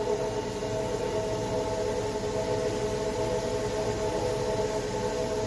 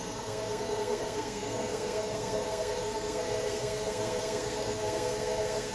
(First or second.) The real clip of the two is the first